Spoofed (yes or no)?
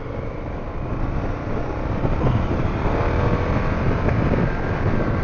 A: no